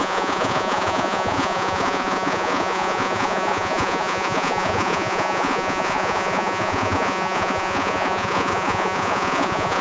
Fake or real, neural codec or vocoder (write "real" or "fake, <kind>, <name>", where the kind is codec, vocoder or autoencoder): fake, vocoder, Vocos